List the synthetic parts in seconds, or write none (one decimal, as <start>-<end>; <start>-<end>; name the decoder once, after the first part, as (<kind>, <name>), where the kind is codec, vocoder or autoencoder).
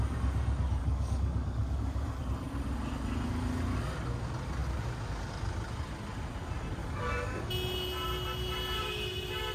0.8-2.2 (codec, DAC); 6.8-7.5